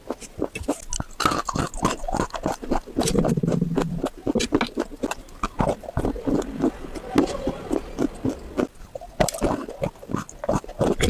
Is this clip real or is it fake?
real